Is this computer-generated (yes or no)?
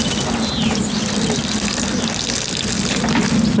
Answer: no